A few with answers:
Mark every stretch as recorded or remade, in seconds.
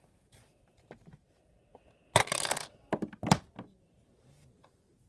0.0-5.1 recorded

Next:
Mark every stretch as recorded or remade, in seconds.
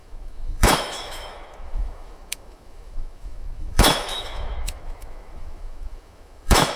0.0-6.8 remade